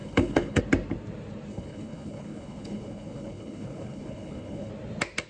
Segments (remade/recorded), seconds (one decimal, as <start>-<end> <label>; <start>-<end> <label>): 0.0-0.6 remade; 0.6-1.5 recorded; 1.5-4.7 remade; 4.7-5.3 recorded